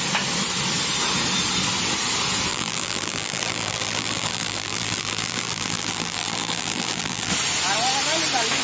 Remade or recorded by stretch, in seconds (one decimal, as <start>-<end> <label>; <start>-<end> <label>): 0.0-2.5 recorded; 2.5-7.3 remade; 7.3-8.6 recorded